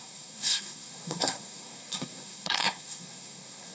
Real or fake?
fake